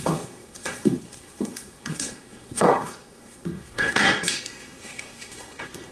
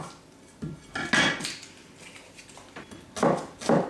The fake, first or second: first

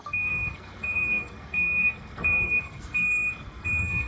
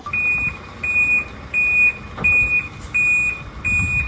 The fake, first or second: first